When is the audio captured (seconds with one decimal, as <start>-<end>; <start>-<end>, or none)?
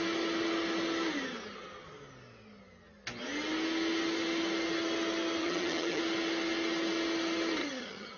0.0-5.4; 6.0-7.6